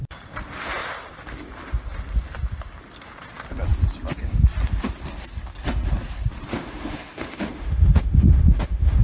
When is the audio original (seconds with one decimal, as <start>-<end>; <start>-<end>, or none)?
0.0-6.5